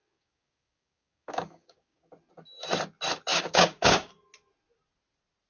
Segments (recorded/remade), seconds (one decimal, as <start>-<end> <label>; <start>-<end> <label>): 0.0-2.1 remade; 2.1-3.3 recorded; 3.3-4.1 remade; 4.1-5.5 recorded